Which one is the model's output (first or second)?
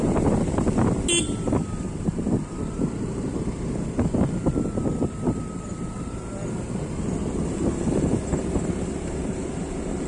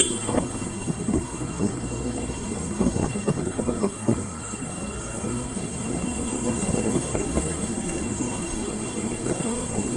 second